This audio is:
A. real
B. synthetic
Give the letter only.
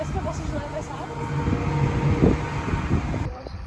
A